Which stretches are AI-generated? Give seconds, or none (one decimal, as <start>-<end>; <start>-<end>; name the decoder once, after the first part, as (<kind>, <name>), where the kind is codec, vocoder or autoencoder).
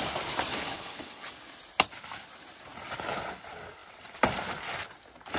0.5-1.3 (codec, HILCodec)